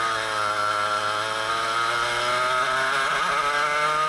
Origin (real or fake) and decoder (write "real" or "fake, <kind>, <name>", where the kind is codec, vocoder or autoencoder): real